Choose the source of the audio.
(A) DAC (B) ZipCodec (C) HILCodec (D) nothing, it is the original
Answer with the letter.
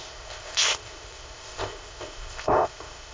B